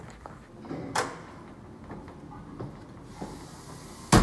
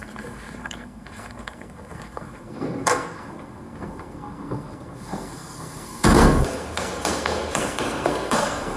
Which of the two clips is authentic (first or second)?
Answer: first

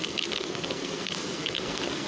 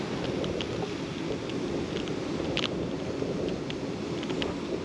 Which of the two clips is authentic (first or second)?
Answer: second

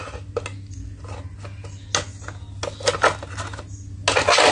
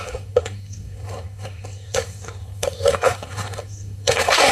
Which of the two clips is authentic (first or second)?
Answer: first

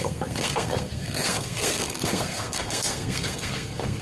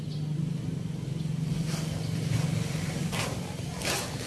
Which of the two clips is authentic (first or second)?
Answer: second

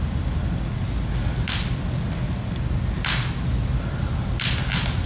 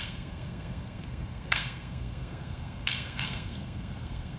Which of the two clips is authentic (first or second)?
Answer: first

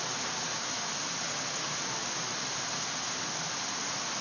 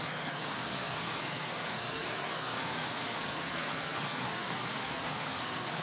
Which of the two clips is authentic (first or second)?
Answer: first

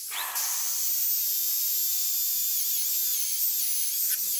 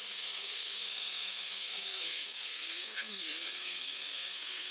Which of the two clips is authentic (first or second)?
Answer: first